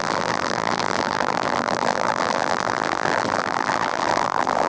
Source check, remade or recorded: remade